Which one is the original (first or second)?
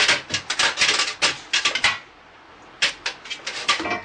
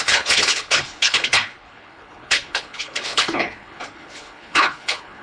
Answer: first